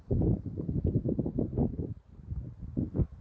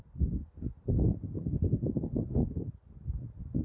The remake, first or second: first